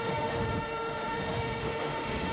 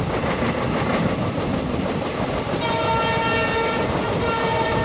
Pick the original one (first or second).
second